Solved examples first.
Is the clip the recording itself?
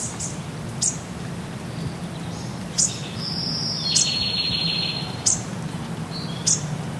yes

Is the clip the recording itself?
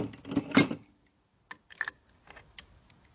yes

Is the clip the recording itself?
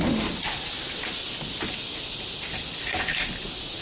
yes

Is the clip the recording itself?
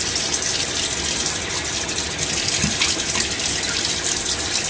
yes